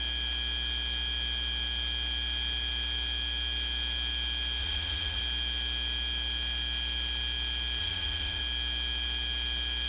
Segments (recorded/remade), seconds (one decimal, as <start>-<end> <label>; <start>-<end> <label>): 0.0-4.6 recorded; 4.6-5.2 remade; 5.2-7.8 recorded; 7.8-8.4 remade; 8.4-9.9 recorded